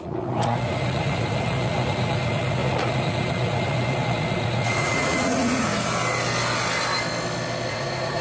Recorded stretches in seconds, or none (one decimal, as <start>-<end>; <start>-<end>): 5.7-7.7